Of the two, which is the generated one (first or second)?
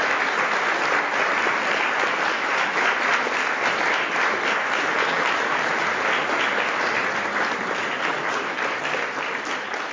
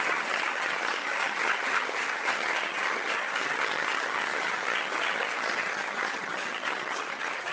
second